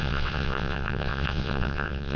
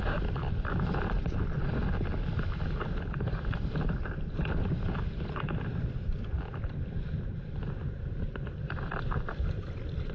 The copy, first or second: first